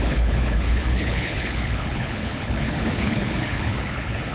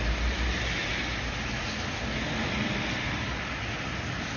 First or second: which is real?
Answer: second